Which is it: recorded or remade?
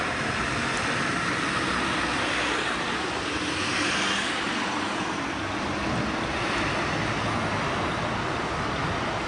recorded